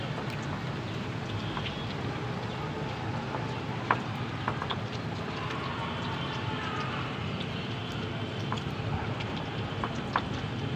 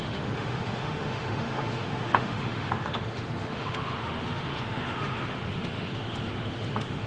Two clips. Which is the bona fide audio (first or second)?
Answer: first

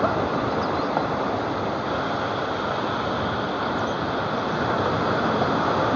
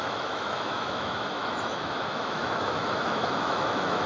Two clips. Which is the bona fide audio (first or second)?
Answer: first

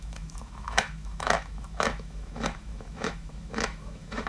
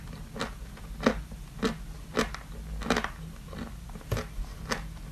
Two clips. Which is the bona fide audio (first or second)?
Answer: second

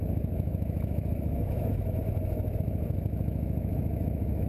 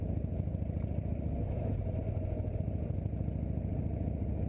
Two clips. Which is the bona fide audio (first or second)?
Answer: second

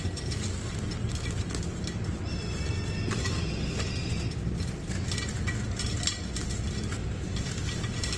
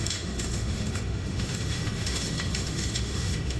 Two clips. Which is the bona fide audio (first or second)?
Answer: first